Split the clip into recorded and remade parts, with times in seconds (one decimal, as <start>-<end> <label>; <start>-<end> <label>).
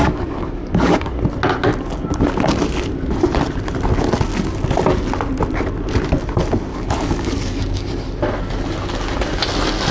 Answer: 0.0-1.1 remade; 1.1-6.7 recorded; 6.7-8.2 remade; 8.2-9.9 recorded